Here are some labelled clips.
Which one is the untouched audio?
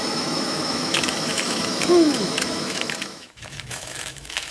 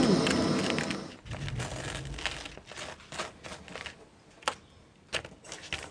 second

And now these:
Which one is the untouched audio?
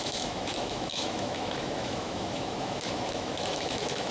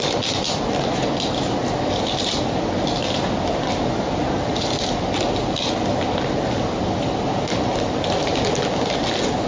second